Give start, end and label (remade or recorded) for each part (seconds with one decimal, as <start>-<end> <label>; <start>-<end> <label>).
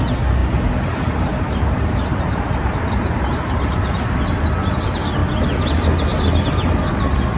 0.0-0.4 recorded; 0.4-4.1 remade; 4.1-7.4 recorded